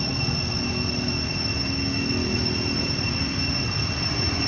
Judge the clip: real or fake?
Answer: real